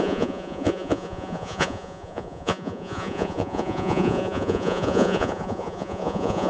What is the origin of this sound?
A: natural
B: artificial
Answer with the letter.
B